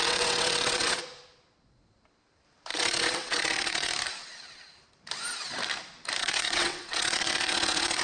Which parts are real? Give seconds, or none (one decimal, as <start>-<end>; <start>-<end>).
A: 1.0-2.7; 3.9-6.2